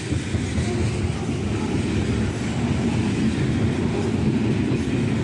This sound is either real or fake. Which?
real